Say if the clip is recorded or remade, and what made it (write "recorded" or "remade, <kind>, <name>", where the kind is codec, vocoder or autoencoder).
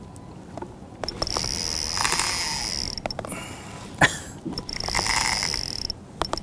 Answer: recorded